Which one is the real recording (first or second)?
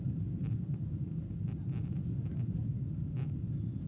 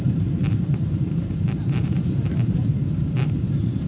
first